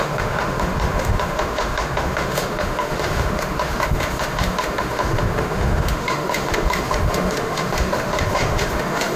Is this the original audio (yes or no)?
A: no